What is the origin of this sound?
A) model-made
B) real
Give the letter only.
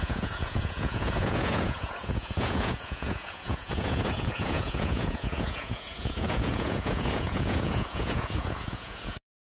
A